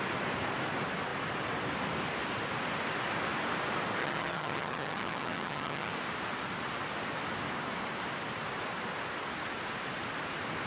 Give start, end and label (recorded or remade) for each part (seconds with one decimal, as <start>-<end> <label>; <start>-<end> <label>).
0.0-4.0 recorded; 4.0-5.9 remade; 5.9-10.7 recorded